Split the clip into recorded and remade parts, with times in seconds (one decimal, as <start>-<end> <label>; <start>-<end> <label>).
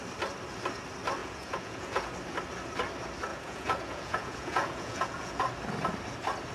0.0-1.2 recorded; 1.2-2.1 remade; 2.1-3.3 recorded; 3.3-5.4 remade; 5.4-6.5 recorded